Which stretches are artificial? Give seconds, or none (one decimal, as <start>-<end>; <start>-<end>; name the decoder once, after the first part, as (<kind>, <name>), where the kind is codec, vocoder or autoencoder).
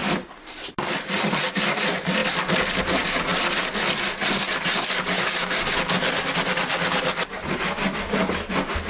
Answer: none